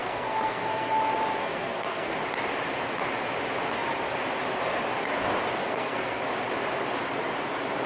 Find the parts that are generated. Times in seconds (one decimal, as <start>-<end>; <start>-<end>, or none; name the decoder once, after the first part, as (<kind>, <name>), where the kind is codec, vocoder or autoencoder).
0.0-0.9 (codec, SNAC); 1.4-2.1; 5.6-6.2